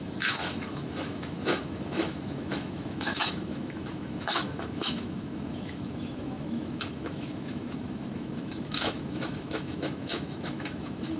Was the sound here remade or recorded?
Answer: remade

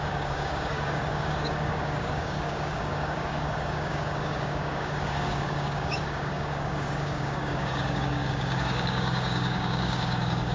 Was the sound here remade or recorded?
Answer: remade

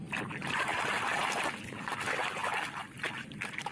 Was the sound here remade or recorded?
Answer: recorded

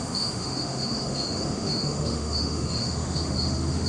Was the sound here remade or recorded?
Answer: remade